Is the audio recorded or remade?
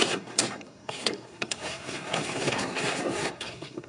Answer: remade